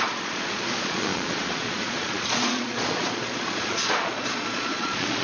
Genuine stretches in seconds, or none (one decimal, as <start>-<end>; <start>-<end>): none